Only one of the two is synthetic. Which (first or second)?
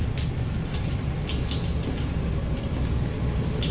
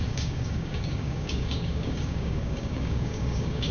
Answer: second